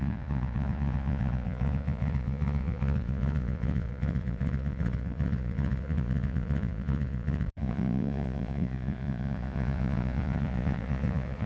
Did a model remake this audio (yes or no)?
yes